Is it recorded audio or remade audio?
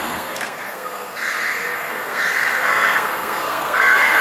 remade